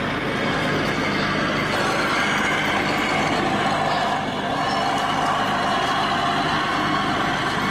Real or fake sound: real